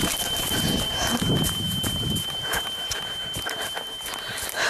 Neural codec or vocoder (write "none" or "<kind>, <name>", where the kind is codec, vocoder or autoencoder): vocoder, BigVGAN v2